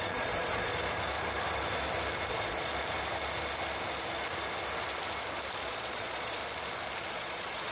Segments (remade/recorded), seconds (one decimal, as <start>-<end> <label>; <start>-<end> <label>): 0.0-0.7 remade; 0.7-2.3 recorded; 2.3-2.7 remade; 2.7-5.7 recorded; 5.7-6.4 remade; 6.4-7.1 recorded; 7.1-7.7 remade